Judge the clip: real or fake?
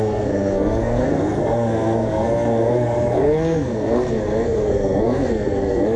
fake